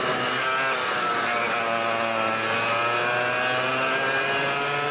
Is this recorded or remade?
recorded